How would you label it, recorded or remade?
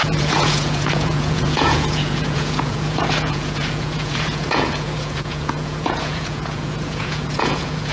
remade